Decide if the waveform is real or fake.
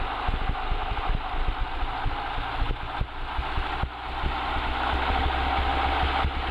real